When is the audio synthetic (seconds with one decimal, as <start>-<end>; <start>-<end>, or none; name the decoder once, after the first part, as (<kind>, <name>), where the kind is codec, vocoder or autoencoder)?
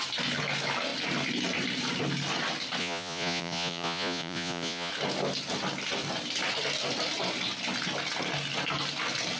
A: 2.8-4.9 (vocoder, Vocos)